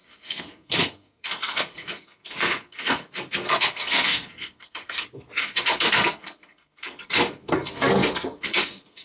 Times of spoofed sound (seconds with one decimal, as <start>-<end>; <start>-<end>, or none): 0.0-9.0